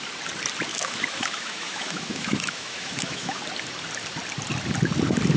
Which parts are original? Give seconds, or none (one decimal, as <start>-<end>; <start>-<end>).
0.0-0.7; 3.4-5.4

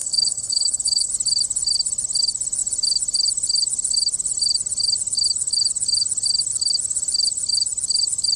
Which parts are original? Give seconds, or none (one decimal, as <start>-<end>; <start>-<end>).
1.1-8.4

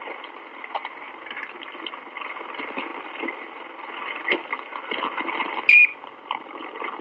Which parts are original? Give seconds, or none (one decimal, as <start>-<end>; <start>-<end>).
0.0-0.5; 1.3-5.9

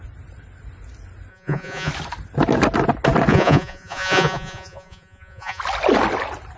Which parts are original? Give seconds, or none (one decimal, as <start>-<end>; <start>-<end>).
0.0-1.3; 1.9-3.3; 5.6-6.6